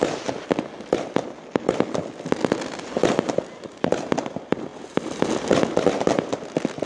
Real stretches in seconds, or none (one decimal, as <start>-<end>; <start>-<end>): 0.0-6.9